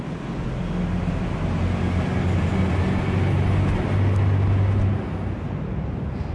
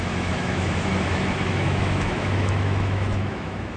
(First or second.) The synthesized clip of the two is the second